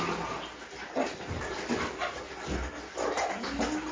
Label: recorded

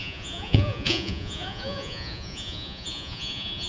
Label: remade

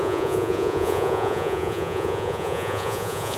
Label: remade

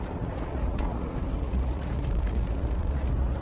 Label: remade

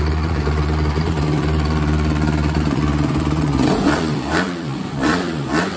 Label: remade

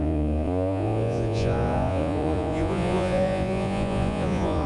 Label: remade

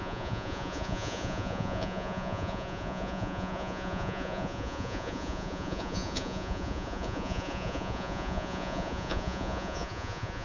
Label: remade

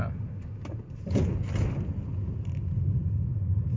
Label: recorded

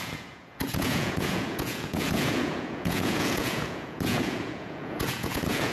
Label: remade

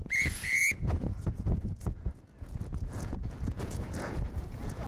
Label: remade